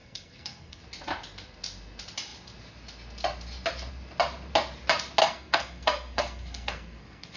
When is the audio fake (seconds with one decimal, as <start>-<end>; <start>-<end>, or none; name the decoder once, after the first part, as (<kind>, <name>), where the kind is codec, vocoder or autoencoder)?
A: 0.0-0.8 (codec, SNAC); 5.2-7.4